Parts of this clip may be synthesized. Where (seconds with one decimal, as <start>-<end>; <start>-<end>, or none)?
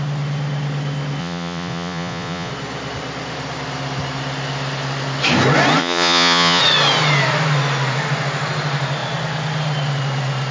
1.2-2.5; 5.8-6.6